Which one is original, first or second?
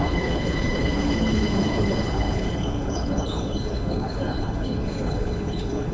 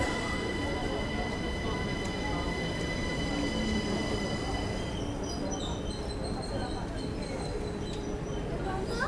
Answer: second